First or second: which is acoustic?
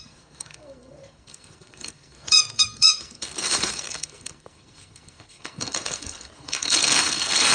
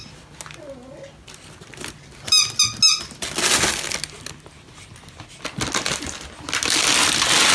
second